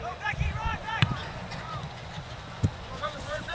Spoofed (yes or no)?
yes